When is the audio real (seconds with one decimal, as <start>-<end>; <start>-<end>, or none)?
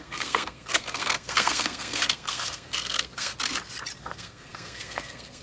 3.3-4.0